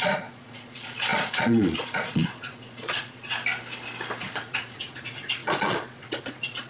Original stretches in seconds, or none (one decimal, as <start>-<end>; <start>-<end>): 3.4-4.2